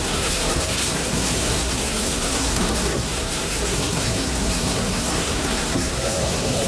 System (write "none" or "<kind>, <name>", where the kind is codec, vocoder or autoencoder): codec, SNAC